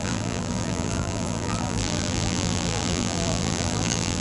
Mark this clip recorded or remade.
remade